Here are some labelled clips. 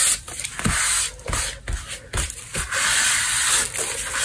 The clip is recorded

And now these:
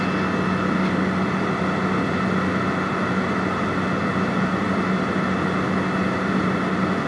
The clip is recorded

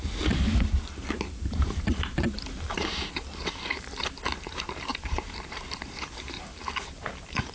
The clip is remade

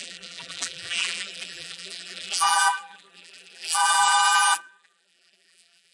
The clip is remade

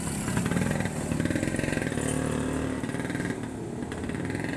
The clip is recorded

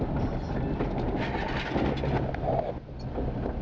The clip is recorded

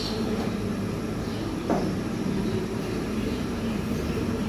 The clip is remade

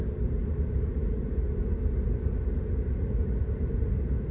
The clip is recorded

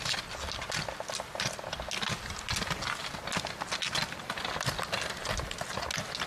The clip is recorded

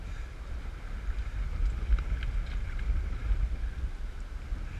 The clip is recorded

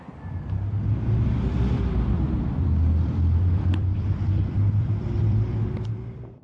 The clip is remade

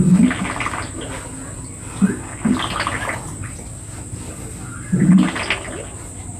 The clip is recorded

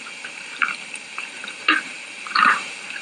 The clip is remade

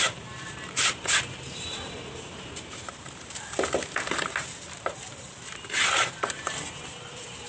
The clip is remade